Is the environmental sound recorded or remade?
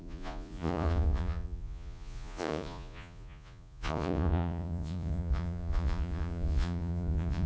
remade